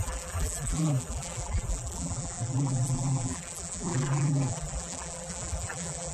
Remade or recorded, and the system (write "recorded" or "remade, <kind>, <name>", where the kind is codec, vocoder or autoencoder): remade, vocoder, BigVGAN v2